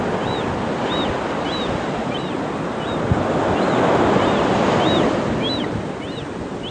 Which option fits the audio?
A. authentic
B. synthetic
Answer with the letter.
A